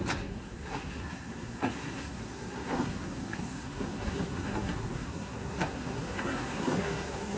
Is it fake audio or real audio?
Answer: fake